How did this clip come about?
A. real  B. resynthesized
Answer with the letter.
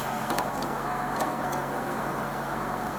B